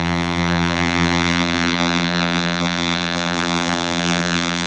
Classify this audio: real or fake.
fake